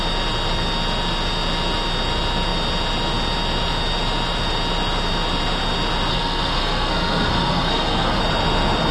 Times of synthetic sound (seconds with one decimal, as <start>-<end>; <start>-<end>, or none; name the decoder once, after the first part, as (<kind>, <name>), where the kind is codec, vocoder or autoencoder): 6.1-8.2 (codec, SNAC)